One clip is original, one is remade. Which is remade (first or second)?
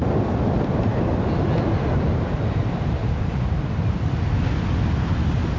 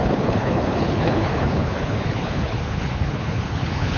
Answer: second